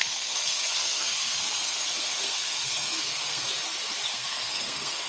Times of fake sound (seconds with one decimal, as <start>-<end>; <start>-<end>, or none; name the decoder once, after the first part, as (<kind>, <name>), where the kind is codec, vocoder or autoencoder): 0.0-3.6 (codec, SNAC); 4.1-5.1